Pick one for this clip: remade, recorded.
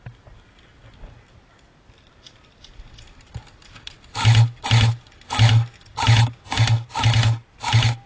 recorded